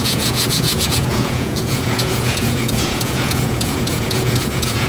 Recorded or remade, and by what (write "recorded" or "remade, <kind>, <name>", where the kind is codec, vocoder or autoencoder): remade, vocoder, Vocos